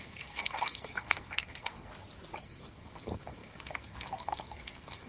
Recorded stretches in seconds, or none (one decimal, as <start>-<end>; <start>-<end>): 1.9-2.4